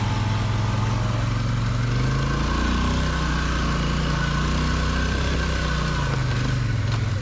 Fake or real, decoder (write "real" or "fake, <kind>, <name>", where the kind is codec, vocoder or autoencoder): real